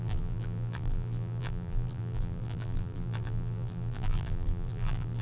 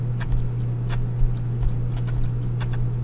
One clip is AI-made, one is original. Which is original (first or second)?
second